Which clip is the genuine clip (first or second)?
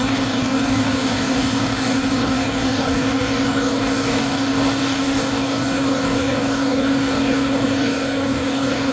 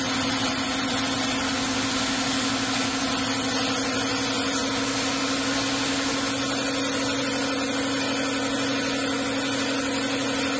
second